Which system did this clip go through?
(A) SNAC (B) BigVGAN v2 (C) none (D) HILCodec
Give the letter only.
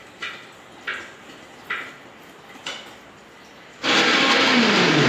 C